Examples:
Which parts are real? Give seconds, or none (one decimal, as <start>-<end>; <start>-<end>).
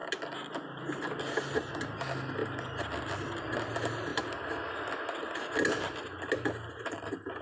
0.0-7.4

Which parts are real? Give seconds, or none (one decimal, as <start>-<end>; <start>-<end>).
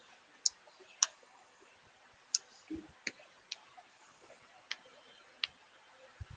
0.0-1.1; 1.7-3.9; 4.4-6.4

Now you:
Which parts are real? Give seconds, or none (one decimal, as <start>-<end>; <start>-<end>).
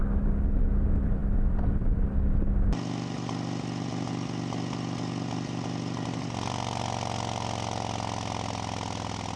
0.0-9.4